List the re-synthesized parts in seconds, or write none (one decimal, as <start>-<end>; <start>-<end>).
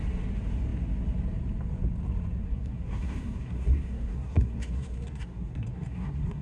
2.4-6.4